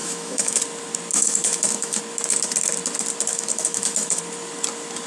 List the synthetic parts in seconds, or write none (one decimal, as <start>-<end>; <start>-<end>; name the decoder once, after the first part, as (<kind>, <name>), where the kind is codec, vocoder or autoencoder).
0.0-0.6 (autoencoder, DAC-VAE); 1.1-2.0; 3.3-4.2